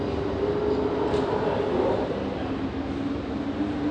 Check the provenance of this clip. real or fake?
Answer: real